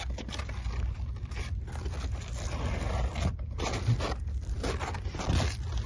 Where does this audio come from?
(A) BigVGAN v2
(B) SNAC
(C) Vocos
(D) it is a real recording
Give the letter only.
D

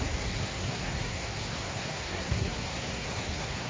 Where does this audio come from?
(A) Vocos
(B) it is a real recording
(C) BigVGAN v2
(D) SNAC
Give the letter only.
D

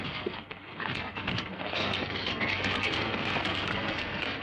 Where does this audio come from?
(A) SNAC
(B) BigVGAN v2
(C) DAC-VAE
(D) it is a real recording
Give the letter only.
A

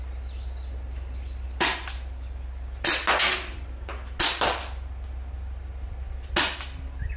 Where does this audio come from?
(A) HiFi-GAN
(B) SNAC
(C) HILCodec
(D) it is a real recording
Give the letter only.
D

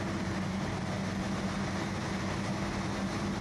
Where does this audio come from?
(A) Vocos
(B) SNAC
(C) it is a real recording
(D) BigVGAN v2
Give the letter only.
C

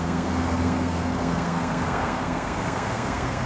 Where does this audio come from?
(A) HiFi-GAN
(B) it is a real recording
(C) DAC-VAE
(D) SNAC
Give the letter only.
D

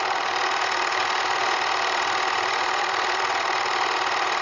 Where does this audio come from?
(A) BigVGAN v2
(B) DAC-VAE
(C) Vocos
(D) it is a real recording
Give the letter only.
D